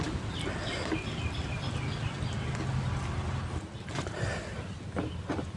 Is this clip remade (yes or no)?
no